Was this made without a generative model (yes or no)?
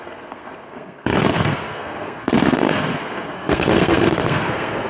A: no